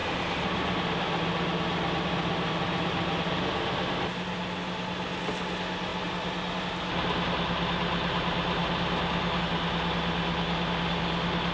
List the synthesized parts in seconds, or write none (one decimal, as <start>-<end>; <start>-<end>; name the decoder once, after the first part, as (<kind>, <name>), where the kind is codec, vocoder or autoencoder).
none